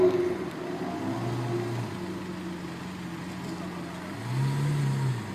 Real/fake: real